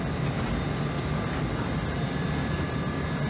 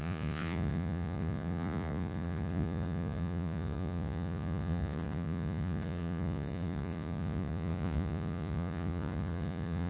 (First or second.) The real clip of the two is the first